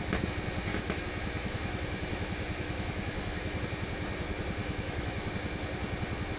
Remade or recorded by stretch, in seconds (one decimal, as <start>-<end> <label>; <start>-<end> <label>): 0.0-0.7 recorded; 0.7-3.6 remade; 3.6-4.6 recorded; 4.6-5.3 remade; 5.3-6.4 recorded